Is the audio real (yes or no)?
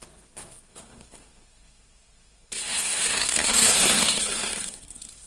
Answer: no